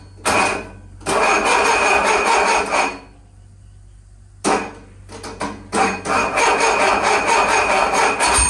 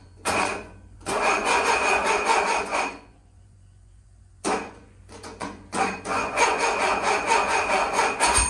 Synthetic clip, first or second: second